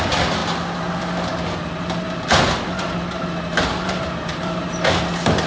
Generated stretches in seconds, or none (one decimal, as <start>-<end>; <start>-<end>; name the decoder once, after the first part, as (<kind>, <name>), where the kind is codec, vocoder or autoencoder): none